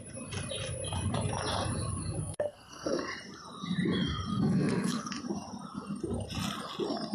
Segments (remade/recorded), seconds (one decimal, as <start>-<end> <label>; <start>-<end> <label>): 0.0-2.2 recorded; 2.2-3.0 remade; 3.0-4.3 recorded; 4.3-5.1 remade; 5.1-7.1 recorded

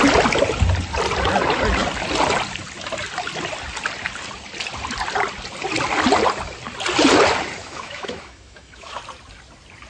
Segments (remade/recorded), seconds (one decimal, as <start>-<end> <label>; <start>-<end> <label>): 0.0-7.6 recorded; 7.6-9.0 remade; 9.0-9.9 recorded

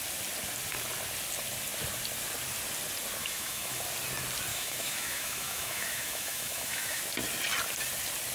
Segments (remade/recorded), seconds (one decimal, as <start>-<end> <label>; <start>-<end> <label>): 0.0-3.2 recorded; 3.2-3.8 remade; 3.8-4.5 recorded; 4.5-7.0 remade; 7.0-8.3 recorded

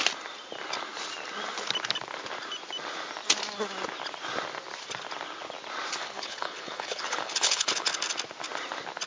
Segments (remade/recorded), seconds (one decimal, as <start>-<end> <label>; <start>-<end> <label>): 0.0-6.0 recorded; 6.0-7.9 remade; 7.9-9.1 recorded

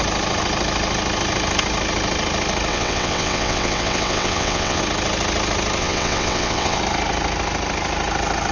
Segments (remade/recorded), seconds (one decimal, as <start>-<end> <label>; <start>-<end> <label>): 0.0-2.7 recorded; 2.7-4.8 remade; 4.8-5.8 recorded; 5.8-6.8 remade; 6.8-8.5 recorded

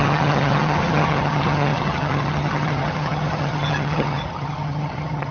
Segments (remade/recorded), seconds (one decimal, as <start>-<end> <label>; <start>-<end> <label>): 0.0-5.3 remade

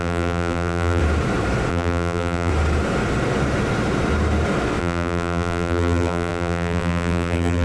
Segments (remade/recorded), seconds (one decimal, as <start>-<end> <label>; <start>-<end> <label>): 0.0-1.0 remade; 1.0-1.7 recorded; 1.7-2.5 remade; 2.5-4.8 recorded; 4.8-7.6 remade

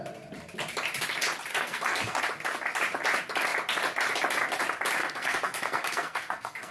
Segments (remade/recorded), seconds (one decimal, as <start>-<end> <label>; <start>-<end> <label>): 0.0-1.5 recorded; 1.5-2.2 remade; 2.2-5.0 recorded; 5.0-6.7 remade